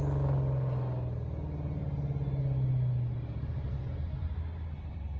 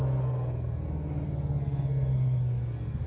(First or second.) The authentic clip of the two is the first